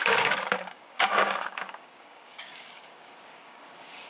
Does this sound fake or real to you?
fake